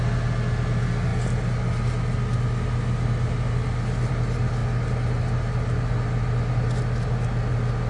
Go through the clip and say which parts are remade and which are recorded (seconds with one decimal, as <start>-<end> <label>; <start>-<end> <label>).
0.0-7.9 recorded